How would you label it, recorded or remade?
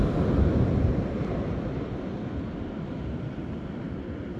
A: recorded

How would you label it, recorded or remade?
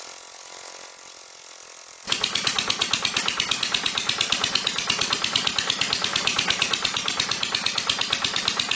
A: recorded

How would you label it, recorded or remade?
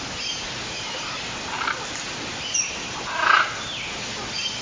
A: recorded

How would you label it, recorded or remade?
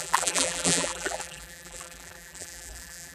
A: remade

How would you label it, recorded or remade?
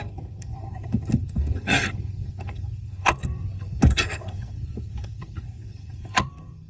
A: remade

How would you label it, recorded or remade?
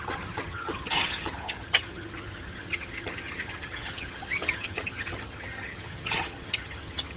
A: remade